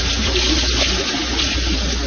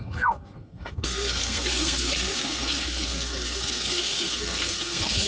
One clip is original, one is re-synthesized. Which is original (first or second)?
first